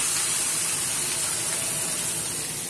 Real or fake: real